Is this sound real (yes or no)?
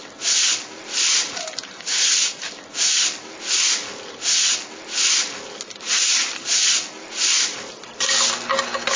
yes